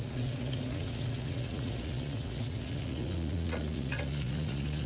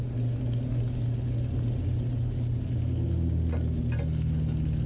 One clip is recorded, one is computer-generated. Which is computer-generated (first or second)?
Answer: first